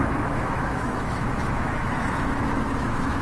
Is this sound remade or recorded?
remade